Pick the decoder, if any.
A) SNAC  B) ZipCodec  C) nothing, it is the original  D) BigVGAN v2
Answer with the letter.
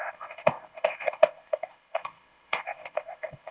B